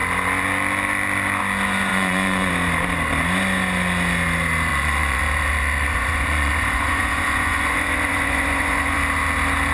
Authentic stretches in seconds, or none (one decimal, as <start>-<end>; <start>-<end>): 0.0-1.9; 2.5-4.7; 5.2-5.9; 9.0-9.7